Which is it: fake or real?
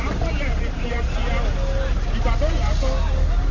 real